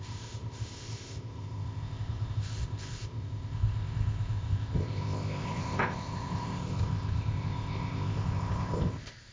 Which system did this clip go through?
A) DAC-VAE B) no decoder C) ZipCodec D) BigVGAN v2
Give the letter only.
C